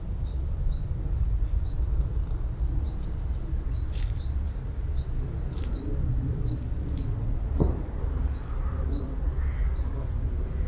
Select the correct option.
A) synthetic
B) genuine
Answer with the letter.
B